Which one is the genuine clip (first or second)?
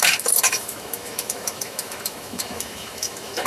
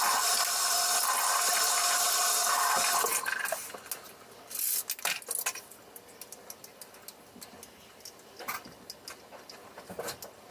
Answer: second